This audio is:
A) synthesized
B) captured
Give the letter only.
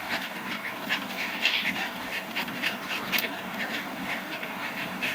A